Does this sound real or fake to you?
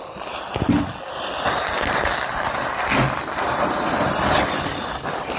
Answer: real